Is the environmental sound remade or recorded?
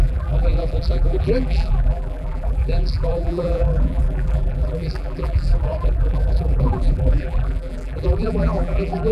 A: remade